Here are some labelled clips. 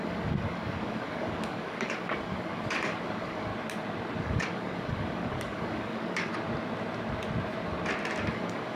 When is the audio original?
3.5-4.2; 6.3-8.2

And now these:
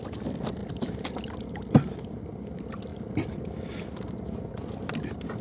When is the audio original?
0.0-0.6; 1.1-5.4

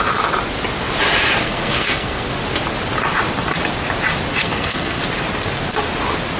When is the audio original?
0.0-1.4; 2.3-4.4; 5.0-6.4

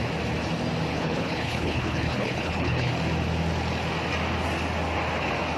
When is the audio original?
0.0-0.9; 2.9-5.6

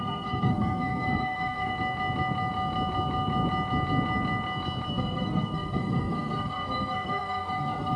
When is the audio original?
1.7-4.9